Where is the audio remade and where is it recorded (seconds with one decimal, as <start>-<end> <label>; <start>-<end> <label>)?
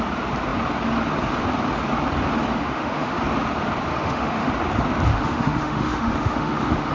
0.0-2.5 recorded; 2.5-3.2 remade; 3.2-3.9 recorded; 3.9-4.5 remade; 4.5-5.1 recorded; 5.1-6.9 remade